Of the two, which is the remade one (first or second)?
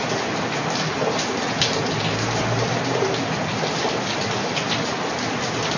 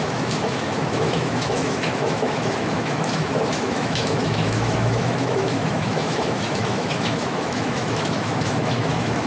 second